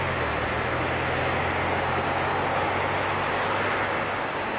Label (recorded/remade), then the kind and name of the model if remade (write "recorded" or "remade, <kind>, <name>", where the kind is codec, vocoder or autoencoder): recorded